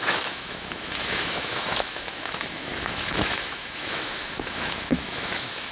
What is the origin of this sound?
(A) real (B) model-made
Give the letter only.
B